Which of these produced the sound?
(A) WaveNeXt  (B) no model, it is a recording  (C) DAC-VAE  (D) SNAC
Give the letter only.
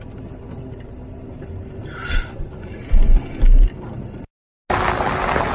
B